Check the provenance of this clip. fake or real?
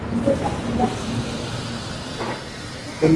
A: real